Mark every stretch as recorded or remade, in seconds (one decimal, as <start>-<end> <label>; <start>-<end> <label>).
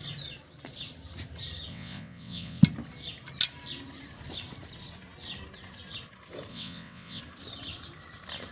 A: 0.0-1.7 recorded; 1.7-2.6 remade; 2.6-6.5 recorded; 6.5-7.2 remade; 7.2-8.5 recorded